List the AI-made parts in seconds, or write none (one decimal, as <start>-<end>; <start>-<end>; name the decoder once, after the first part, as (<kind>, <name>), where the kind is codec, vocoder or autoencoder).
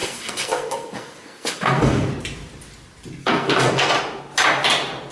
0.0-2.1 (codec, SNAC); 3.2-3.9